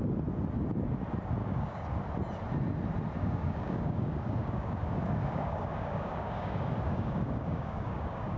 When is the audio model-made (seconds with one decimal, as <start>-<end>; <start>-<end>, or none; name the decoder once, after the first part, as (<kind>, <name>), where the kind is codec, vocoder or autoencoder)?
1.4-2.0 (codec, DAC); 3.2-8.4